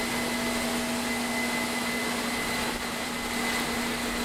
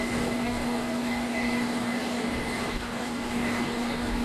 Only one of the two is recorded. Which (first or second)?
first